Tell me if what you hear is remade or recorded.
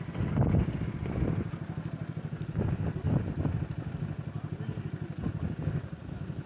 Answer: recorded